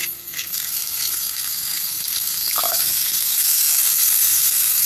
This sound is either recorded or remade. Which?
remade